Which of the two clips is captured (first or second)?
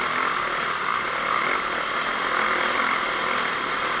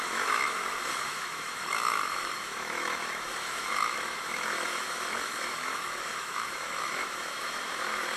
first